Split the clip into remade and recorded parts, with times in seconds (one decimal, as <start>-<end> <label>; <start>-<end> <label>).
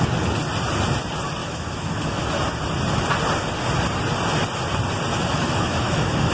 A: 0.0-1.4 recorded; 1.4-2.4 remade; 2.4-5.1 recorded; 5.1-6.3 remade